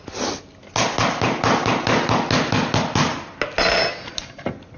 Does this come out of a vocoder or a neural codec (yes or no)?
no